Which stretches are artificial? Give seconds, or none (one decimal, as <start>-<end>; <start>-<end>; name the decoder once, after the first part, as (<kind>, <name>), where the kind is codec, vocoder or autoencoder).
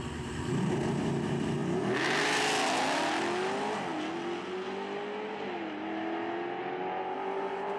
none